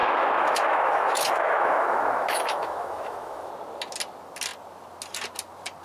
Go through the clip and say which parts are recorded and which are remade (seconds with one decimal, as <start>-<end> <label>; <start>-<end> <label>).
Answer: 0.0-3.5 remade; 3.5-5.8 recorded